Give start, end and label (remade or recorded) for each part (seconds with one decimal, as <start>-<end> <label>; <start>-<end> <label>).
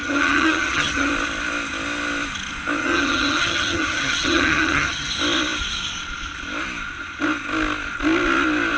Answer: 0.0-1.1 remade; 1.1-2.8 recorded; 2.8-5.1 remade; 5.1-8.8 recorded